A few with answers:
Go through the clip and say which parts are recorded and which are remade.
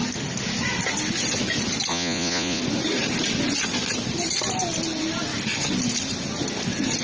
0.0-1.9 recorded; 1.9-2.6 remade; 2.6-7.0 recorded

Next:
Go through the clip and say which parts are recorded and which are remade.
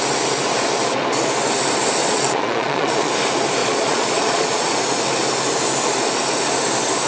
0.0-2.0 recorded; 2.0-3.1 remade; 3.1-3.6 recorded; 3.6-4.7 remade; 4.7-7.1 recorded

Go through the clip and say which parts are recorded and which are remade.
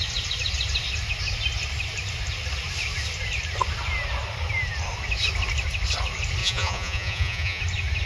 0.0-6.4 recorded; 6.4-7.6 remade; 7.6-8.1 recorded